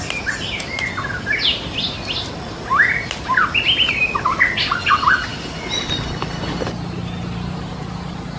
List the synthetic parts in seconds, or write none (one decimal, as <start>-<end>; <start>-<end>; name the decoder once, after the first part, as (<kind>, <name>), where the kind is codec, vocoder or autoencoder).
none